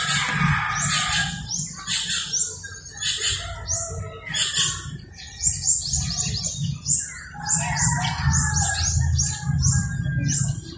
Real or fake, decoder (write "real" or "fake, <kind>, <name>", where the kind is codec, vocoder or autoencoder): real